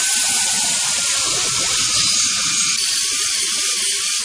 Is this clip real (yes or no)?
yes